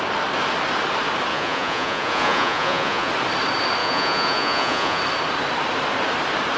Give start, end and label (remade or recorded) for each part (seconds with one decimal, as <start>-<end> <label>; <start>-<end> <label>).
0.0-1.3 recorded; 1.3-3.1 remade; 3.1-3.8 recorded; 3.8-5.0 remade; 5.0-6.6 recorded